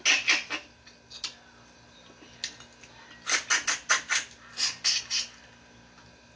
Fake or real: real